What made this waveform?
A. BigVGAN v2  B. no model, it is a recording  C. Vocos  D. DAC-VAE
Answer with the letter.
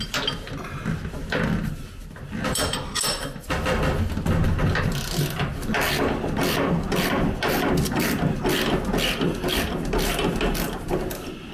B